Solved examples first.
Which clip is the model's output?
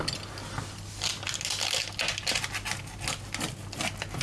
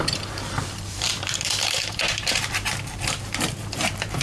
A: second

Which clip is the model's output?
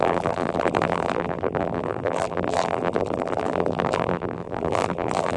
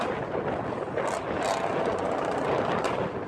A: first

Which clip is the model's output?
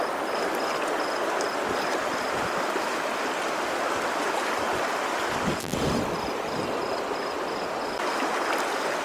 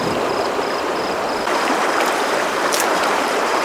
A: second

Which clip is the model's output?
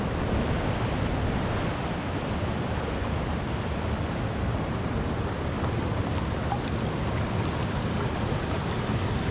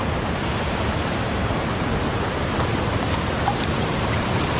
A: second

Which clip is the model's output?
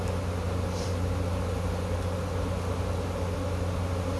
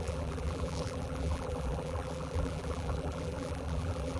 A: second